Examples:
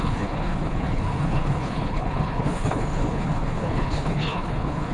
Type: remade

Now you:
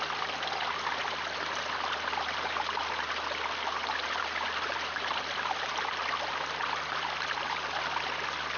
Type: recorded